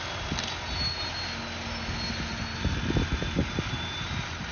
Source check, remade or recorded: recorded